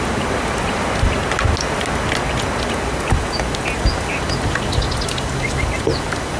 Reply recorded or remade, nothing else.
recorded